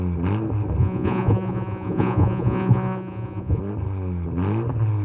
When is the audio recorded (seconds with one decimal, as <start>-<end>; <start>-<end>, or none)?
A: 0.0-0.8; 3.6-5.0